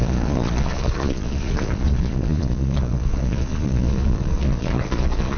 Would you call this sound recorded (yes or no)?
no